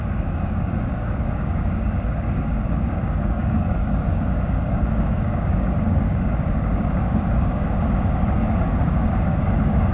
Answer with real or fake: fake